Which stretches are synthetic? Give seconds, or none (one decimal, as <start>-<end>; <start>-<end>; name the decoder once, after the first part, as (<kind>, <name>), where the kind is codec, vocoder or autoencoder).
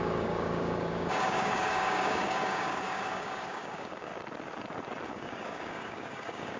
0.0-4.1 (codec, DAC); 5.1-6.6